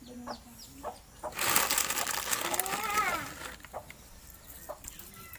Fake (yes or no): no